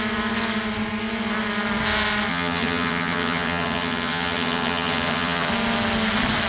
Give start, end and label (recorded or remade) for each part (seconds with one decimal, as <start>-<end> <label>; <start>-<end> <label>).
0.0-2.3 recorded; 2.3-5.5 remade; 5.5-6.5 recorded

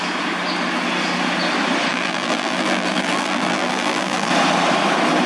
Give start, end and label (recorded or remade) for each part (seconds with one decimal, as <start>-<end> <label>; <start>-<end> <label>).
0.0-1.9 recorded; 1.9-4.3 remade; 4.3-5.3 recorded

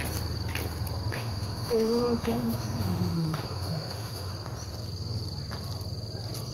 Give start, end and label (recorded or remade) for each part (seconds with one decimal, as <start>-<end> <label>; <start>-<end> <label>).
0.0-1.1 recorded; 1.1-4.3 remade; 4.3-6.5 recorded

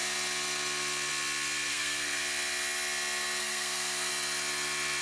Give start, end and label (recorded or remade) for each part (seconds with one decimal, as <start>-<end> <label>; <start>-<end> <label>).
0.0-1.7 recorded; 1.7-2.2 remade; 2.2-3.4 recorded; 3.4-4.1 remade; 4.1-5.0 recorded

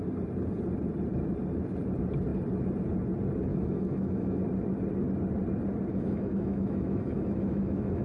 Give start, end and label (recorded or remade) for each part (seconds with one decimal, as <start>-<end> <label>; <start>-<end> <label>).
0.0-3.5 recorded; 3.5-4.4 remade; 4.4-5.9 recorded; 5.9-8.0 remade

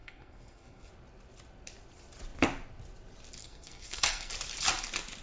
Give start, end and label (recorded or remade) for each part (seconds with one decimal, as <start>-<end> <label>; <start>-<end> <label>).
0.0-0.9 remade; 0.9-3.4 recorded; 3.4-4.3 remade; 4.3-5.2 recorded